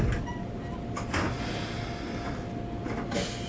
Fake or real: real